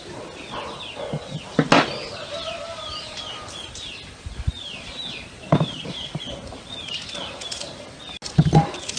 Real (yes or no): yes